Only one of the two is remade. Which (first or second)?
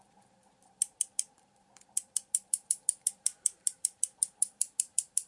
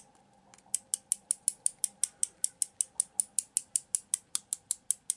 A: first